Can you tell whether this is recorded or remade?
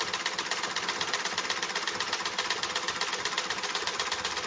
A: recorded